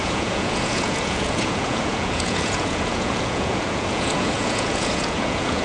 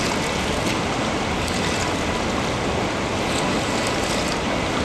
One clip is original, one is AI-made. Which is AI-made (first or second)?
first